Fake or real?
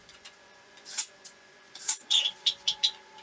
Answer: fake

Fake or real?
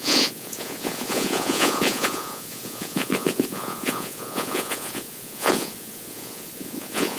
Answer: fake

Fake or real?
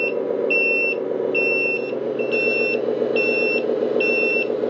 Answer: real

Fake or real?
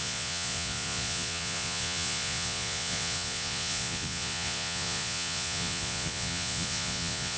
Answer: fake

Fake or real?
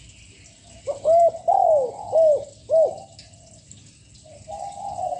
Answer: real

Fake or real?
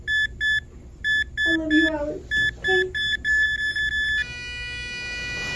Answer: real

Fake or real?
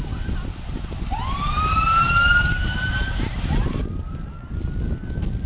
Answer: real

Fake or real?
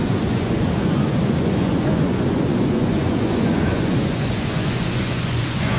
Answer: fake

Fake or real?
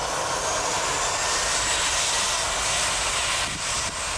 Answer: real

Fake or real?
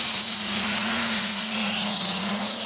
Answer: fake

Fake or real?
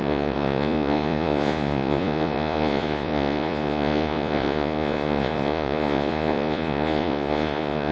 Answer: fake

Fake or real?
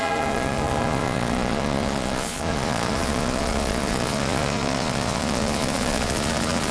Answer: fake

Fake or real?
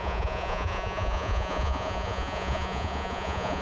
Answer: fake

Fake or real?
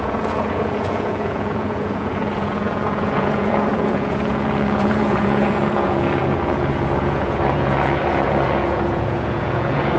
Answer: fake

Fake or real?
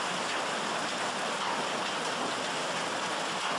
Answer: real